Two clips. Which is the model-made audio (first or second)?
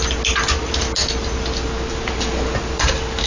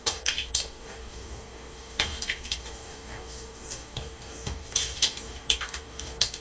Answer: second